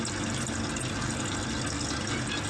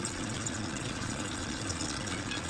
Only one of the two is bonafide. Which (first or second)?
first